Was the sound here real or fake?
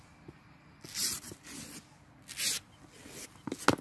real